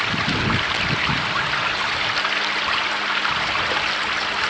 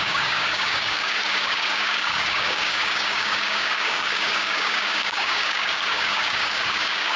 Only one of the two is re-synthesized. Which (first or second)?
second